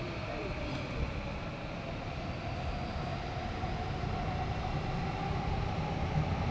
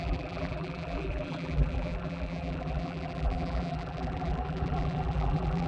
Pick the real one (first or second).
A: first